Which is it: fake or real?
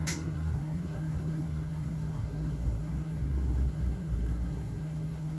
fake